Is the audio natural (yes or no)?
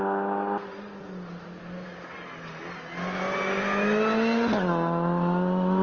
yes